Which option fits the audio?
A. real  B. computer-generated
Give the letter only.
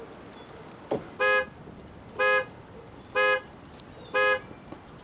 A